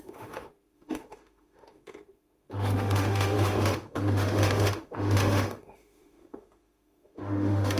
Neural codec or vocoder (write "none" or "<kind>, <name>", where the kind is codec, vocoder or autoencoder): autoencoder, DAC-VAE